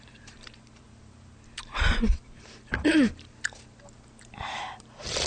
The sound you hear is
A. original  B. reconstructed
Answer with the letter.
B